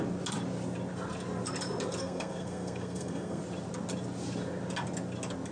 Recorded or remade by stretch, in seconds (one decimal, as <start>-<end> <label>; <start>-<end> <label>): 0.0-2.0 recorded; 2.0-3.4 remade; 3.4-5.5 recorded